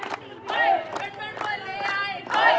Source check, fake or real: real